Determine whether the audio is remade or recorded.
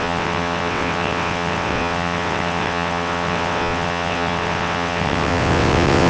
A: remade